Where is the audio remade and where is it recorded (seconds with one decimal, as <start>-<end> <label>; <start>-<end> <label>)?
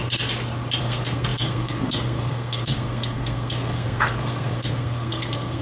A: 0.0-0.8 recorded; 0.8-5.6 remade